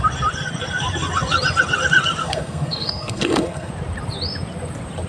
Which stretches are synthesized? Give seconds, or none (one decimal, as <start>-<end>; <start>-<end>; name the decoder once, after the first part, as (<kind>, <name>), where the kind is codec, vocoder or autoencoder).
2.2-3.7 (codec, SNAC)